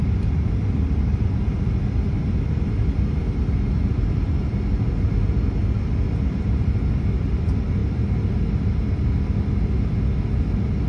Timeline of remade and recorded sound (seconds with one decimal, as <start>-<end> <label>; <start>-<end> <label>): 0.0-10.9 recorded